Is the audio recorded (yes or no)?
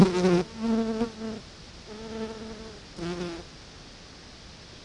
yes